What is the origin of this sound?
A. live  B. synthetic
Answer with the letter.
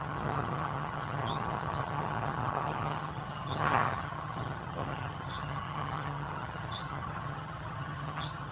B